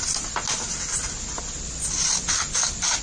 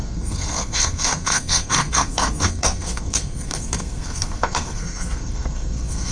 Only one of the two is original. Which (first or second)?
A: first